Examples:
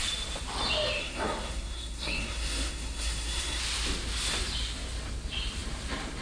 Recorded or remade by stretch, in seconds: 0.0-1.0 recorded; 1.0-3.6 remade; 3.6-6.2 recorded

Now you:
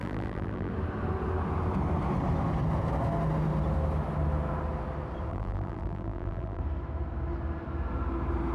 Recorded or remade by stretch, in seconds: 0.0-0.7 remade; 0.7-5.3 recorded; 5.3-6.6 remade; 6.6-8.5 recorded

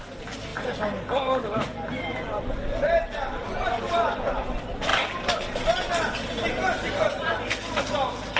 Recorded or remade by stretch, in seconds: 0.0-8.4 recorded

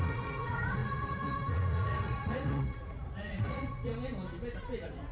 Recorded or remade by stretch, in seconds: 0.0-3.9 remade; 3.9-4.6 recorded; 4.6-5.1 remade

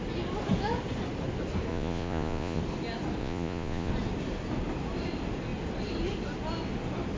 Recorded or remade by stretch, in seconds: 0.0-1.7 recorded; 1.7-2.6 remade; 2.6-3.2 recorded; 3.2-3.9 remade; 3.9-7.2 recorded